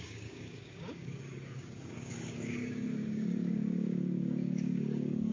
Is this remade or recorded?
remade